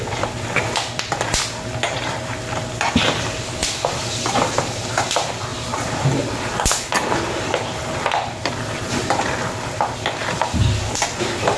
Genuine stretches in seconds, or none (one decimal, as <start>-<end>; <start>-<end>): 0.0-11.6